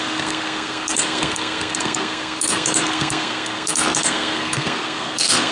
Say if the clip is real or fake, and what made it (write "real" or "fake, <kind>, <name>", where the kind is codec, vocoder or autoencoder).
fake, codec, SNAC